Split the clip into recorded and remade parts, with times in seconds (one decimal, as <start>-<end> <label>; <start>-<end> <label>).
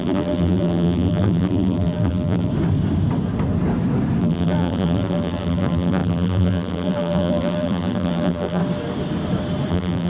0.0-2.5 remade; 2.5-4.2 recorded; 4.2-8.6 remade; 8.6-9.7 recorded; 9.7-10.1 remade